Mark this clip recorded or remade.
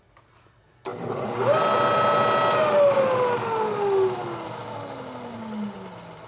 recorded